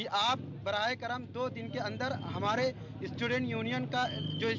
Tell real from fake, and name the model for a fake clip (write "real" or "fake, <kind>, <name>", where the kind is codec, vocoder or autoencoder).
real